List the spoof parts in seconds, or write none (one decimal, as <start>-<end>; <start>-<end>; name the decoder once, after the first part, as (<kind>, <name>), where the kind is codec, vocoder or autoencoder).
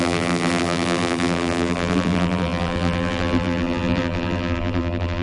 0.0-5.2 (vocoder, BigVGAN v2)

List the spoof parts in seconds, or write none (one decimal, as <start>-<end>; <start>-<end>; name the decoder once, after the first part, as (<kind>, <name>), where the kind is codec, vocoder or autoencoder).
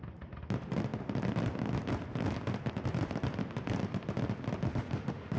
4.7-5.4 (autoencoder, DAC-VAE)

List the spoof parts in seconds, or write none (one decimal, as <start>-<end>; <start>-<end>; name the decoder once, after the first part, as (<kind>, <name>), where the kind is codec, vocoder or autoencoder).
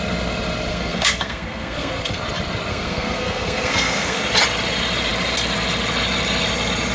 0.7-2.2 (codec, SNAC); 2.7-4.2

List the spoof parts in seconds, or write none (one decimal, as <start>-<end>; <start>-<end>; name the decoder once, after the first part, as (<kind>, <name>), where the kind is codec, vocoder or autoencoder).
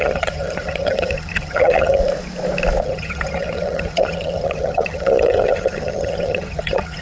0.0-2.0 (vocoder, HiFi-GAN); 2.8-7.0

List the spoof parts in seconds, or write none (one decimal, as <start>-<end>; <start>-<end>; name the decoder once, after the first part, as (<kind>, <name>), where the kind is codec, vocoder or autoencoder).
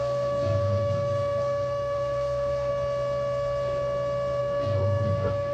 0.0-2.7 (codec, SNAC); 4.4-5.5